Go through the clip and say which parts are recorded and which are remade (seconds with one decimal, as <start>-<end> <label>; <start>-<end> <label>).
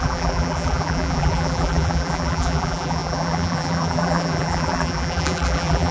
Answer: 0.0-5.9 remade